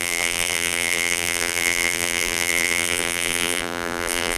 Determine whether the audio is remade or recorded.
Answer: remade